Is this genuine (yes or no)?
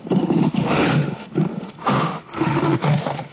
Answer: no